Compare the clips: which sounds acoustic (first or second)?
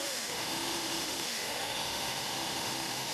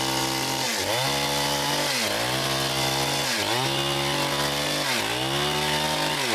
second